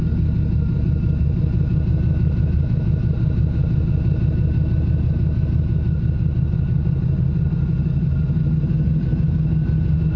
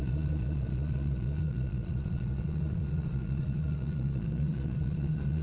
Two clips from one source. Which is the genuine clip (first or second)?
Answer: first